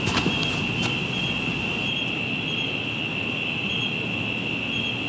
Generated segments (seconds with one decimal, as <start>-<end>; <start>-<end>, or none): none